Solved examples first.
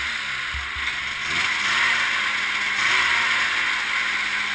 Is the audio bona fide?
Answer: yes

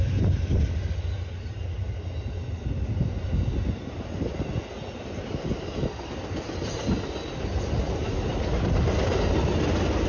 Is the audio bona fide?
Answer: yes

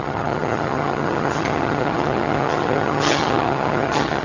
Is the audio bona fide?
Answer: no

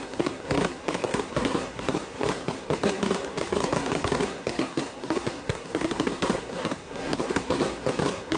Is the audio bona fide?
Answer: no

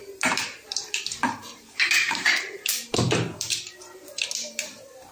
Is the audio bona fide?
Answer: no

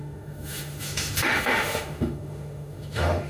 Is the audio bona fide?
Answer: no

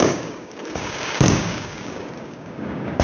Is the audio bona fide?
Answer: no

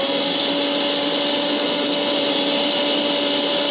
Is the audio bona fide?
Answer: yes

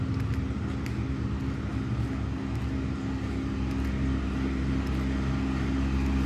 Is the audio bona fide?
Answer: yes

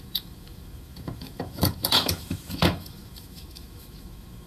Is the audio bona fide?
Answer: no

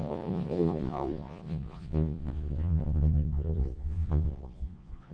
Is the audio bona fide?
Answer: no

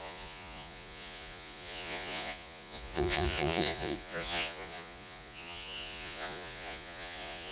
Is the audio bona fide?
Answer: no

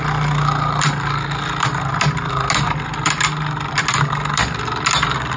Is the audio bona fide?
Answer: yes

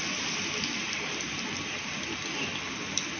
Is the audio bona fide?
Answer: yes